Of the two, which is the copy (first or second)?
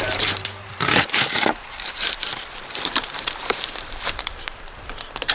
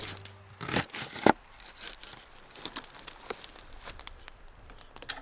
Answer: first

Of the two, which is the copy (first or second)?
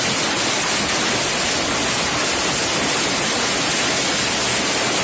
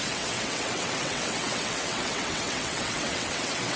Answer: second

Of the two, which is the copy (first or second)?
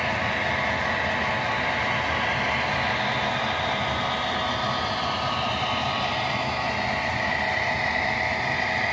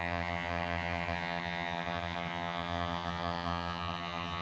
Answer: second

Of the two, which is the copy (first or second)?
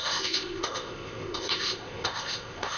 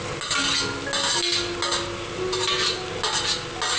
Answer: first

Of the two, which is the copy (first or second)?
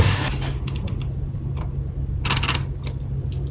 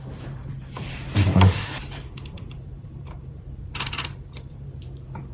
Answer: second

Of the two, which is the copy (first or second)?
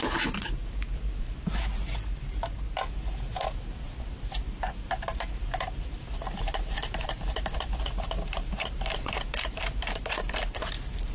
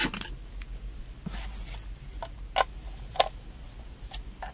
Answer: first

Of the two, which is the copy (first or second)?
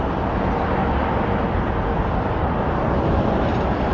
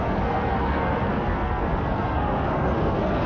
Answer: second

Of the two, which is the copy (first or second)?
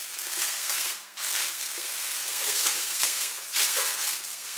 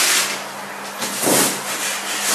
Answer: first